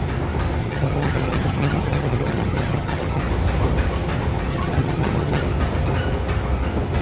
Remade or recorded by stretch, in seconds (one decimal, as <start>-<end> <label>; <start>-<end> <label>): 0.0-0.6 recorded; 0.6-3.2 remade; 3.2-4.5 recorded; 4.5-5.4 remade; 5.4-7.0 recorded